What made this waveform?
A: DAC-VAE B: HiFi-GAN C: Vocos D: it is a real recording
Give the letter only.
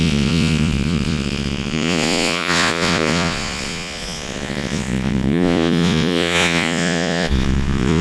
C